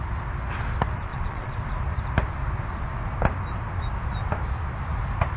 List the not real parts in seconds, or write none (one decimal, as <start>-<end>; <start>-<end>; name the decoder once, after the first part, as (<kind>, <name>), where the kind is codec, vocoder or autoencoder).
1.1-1.6 (vocoder, WaveNeXt)